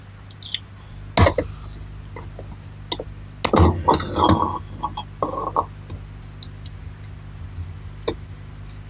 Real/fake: real